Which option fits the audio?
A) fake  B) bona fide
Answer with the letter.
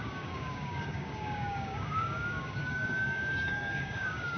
A